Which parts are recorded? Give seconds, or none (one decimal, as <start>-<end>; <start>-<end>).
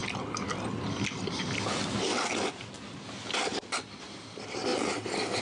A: 0.0-2.1; 2.7-3.5; 4.2-5.4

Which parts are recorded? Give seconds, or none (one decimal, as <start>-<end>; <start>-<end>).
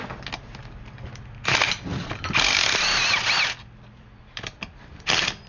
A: 0.0-1.9